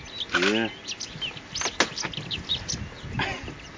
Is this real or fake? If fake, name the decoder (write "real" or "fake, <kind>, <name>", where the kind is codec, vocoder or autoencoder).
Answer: real